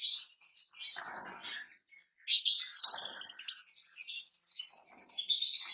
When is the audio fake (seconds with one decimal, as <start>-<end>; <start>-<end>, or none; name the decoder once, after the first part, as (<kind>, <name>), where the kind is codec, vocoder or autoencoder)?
0.4-1.5 (vocoder, BigVGAN v2); 2.7-5.1